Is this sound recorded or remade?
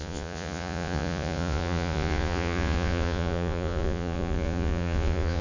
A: remade